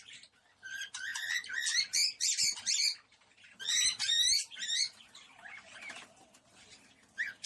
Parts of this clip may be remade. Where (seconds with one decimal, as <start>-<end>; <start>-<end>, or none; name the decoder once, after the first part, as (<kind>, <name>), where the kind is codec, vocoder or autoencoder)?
none